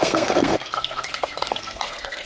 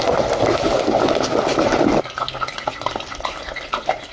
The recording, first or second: second